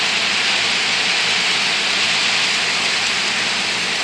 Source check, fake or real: real